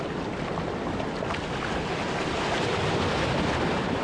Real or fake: real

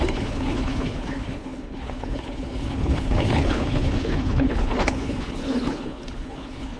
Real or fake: fake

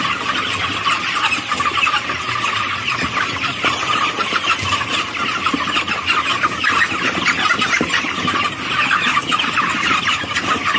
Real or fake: real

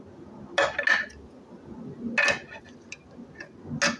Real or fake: real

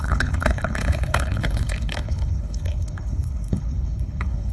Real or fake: fake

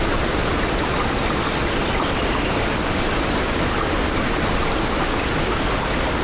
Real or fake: real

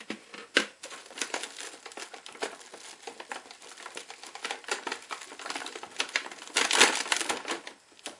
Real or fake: real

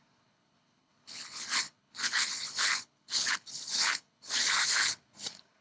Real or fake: fake